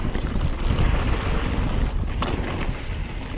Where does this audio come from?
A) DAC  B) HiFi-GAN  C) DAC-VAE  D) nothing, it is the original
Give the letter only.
D